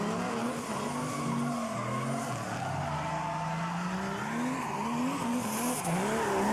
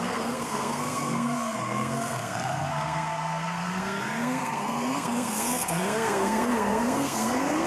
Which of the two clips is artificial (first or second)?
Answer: second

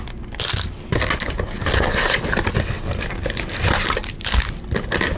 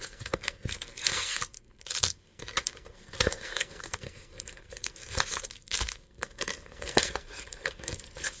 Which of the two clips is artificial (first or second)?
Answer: second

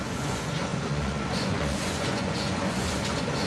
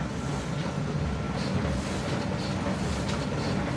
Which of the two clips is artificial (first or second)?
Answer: first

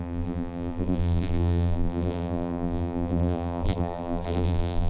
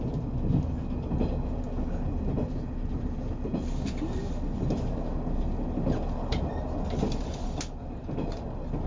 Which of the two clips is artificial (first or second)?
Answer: first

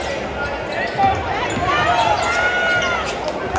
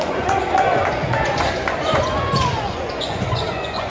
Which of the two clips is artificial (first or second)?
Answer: second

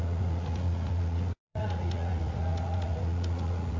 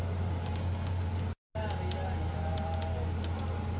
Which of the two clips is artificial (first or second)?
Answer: first